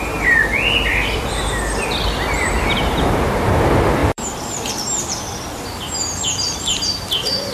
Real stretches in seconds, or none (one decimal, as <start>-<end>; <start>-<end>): 0.0-0.9; 3.0-4.0